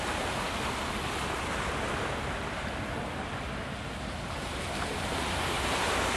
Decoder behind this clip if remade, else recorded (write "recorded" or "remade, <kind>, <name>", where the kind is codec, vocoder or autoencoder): recorded